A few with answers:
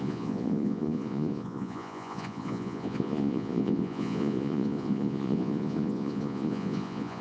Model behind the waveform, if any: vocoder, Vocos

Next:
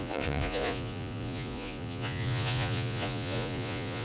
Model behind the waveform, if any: vocoder, Vocos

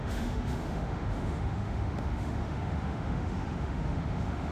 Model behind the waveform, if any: autoencoder, DAC-VAE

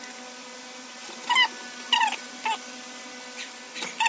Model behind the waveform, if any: none